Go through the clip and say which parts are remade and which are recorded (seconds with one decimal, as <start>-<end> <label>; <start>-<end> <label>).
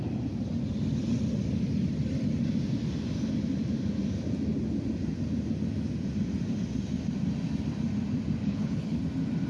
0.0-8.4 recorded; 8.4-9.0 remade; 9.0-9.5 recorded